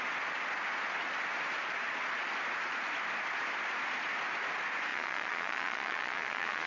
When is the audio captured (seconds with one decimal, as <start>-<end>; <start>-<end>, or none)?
0.0-4.9